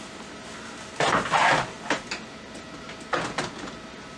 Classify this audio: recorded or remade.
recorded